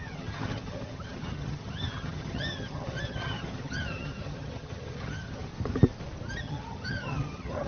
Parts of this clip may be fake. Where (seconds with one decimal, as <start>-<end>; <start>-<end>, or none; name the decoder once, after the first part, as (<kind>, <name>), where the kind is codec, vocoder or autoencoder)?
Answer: 0.0-5.5 (vocoder, HiFi-GAN); 6.4-7.7